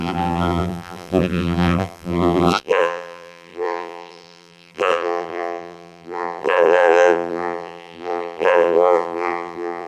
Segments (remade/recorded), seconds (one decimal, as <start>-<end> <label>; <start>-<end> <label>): 0.0-9.9 remade